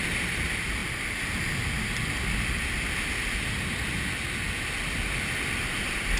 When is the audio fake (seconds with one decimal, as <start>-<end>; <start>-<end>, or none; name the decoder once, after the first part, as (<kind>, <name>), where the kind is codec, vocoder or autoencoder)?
none